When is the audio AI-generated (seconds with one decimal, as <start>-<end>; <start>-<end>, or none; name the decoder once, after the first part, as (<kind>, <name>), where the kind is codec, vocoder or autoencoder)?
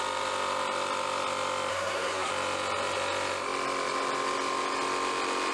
1.7-2.3 (codec, SNAC)